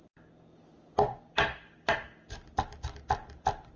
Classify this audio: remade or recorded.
recorded